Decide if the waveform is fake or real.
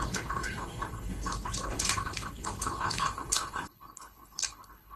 fake